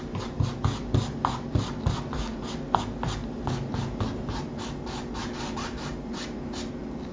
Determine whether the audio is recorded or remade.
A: recorded